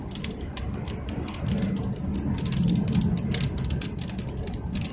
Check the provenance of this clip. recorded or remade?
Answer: recorded